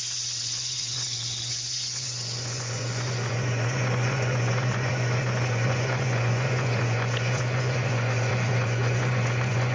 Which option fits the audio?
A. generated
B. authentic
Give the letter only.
A